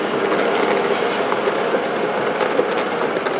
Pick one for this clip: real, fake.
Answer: real